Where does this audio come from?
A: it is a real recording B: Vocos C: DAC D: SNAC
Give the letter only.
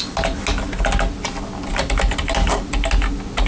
A